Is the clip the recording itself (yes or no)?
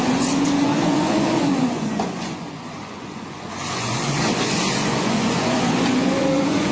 no